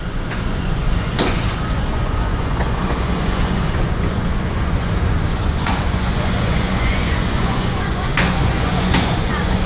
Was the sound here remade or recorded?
remade